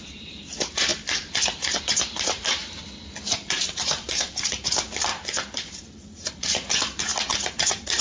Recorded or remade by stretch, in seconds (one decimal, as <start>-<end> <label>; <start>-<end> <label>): 0.0-0.9 remade; 0.9-1.8 recorded; 1.8-2.6 remade; 2.6-3.3 recorded; 3.3-8.0 remade